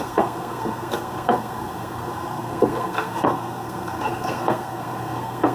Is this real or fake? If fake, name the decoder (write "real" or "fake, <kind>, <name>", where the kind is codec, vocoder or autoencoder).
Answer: fake, codec, SNAC